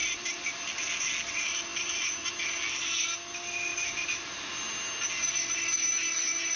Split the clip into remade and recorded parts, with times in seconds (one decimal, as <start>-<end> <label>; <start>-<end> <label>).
0.0-0.6 remade; 0.6-1.7 recorded; 1.7-2.3 remade; 2.3-3.7 recorded; 3.7-4.5 remade; 4.5-6.6 recorded